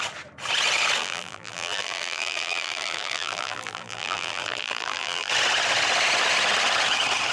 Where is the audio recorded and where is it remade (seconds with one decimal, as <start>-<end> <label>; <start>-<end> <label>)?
0.0-1.0 recorded; 1.0-5.3 remade; 5.3-7.3 recorded